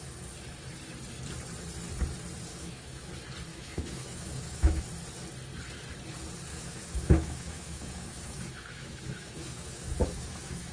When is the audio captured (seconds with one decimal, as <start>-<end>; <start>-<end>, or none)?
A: 0.0-2.5; 3.1-3.5; 4.8-6.5